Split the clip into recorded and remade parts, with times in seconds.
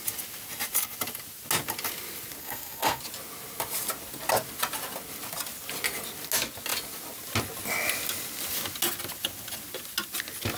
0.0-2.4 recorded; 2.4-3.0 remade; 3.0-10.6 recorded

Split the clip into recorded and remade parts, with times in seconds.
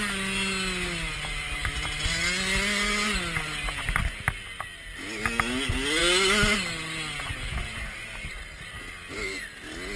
0.0-10.0 recorded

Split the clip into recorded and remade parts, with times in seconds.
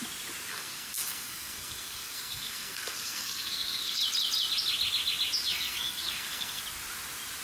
0.0-0.5 recorded; 0.5-4.0 remade; 4.0-5.5 recorded; 5.5-6.6 remade; 6.6-7.4 recorded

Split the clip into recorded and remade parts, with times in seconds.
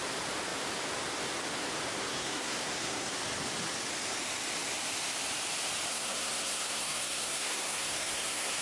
0.0-2.1 recorded; 2.1-3.1 remade; 3.1-5.9 recorded; 5.9-8.6 remade